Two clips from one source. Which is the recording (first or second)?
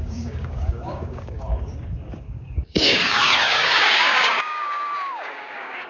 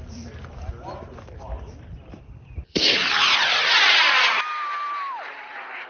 second